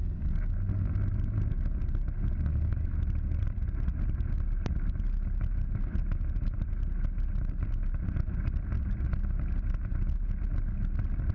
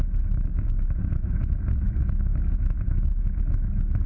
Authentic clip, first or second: first